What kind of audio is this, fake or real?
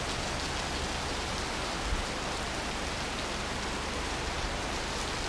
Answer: real